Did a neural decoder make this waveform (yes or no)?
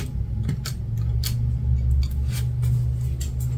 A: no